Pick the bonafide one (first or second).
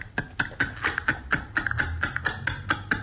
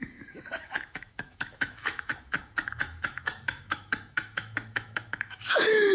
first